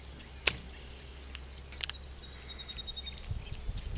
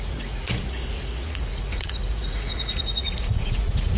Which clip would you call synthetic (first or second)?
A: second